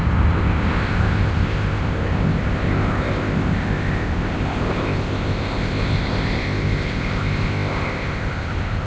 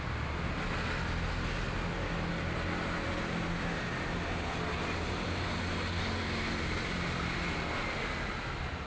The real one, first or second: second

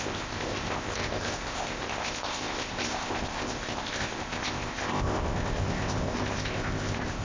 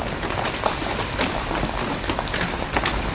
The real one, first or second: second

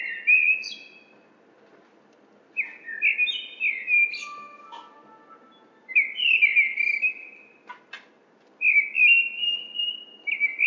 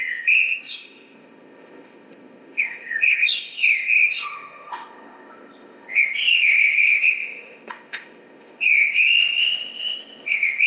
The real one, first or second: first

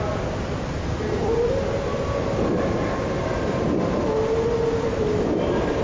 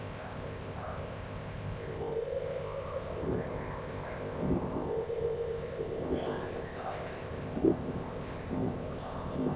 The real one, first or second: first